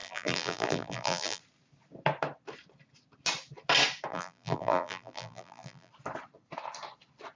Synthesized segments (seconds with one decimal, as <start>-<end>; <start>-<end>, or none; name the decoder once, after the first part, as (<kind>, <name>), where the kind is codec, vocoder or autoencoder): 0.0-1.4 (vocoder, BigVGAN v2); 4.1-5.9